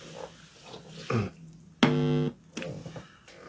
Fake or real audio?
real